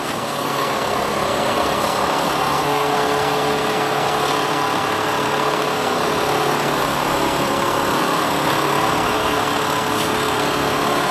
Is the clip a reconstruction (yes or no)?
yes